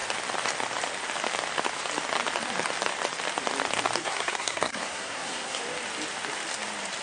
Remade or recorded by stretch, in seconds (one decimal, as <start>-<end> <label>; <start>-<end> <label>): 0.0-4.0 recorded; 4.0-5.6 remade; 5.6-7.0 recorded